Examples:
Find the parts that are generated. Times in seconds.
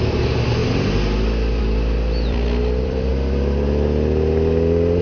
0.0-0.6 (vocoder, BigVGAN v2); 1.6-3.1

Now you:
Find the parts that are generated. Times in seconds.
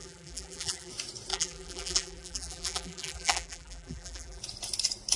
0.0-0.9 (vocoder, BigVGAN v2); 1.3-4.4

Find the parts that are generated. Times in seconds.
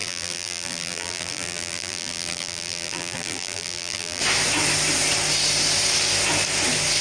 0.0-4.2 (vocoder, BigVGAN v2)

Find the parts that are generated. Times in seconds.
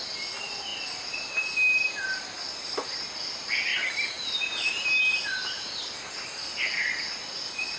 3.7-5.0 (vocoder, BigVGAN v2)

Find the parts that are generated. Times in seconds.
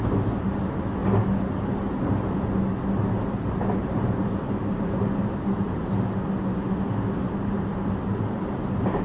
3.8-5.8 (vocoder, BigVGAN v2)